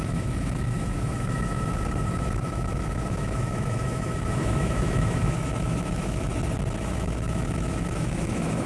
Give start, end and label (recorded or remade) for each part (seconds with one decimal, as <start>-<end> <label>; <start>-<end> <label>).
0.0-6.3 remade; 6.3-6.8 recorded; 6.8-8.7 remade